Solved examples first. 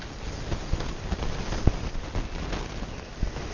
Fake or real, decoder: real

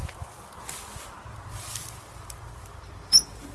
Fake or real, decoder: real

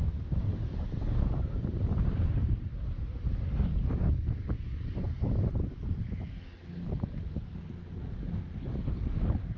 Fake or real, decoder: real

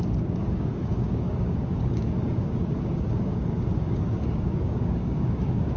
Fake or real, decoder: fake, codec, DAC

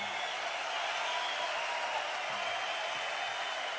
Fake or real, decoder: real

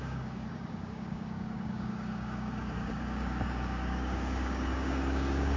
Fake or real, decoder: fake, codec, DAC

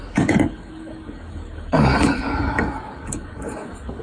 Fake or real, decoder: fake, codec, DAC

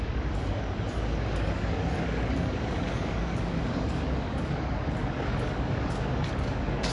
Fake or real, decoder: fake, codec, DAC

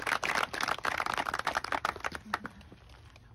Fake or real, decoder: real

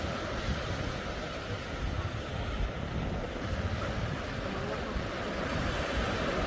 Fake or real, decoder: real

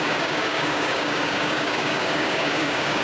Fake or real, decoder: fake, codec, DAC